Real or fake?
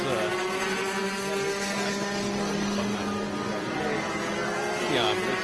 real